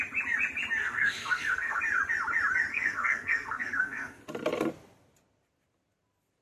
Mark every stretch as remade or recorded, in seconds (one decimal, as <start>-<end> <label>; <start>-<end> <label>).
0.0-0.8 recorded; 0.8-1.8 remade; 1.8-2.7 recorded; 2.7-4.2 remade; 4.2-6.4 recorded